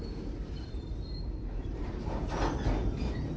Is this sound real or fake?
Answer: real